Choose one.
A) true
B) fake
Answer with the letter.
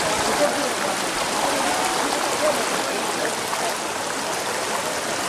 A